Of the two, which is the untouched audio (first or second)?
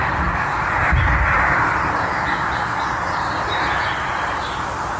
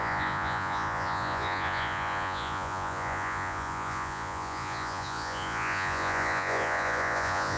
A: first